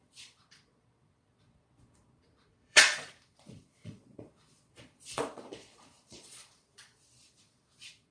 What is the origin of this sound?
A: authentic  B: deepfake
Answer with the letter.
B